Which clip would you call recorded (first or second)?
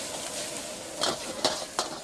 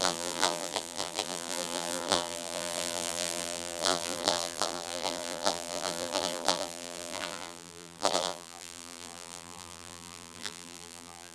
first